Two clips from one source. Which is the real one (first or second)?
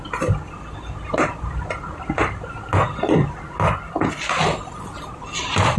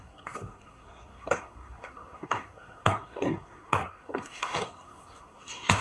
first